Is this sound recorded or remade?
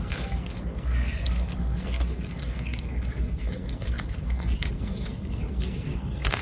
remade